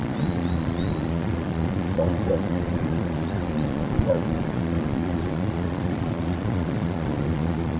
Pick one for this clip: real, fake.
fake